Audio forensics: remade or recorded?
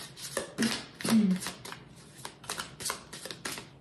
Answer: recorded